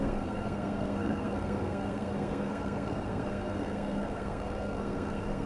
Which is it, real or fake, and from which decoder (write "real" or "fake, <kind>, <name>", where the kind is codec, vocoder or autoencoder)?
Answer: fake, codec, SNAC